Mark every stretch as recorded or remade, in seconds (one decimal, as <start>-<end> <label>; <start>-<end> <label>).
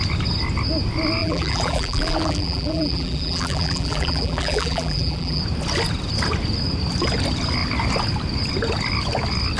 0.0-1.2 recorded; 1.2-5.4 remade; 5.4-9.6 recorded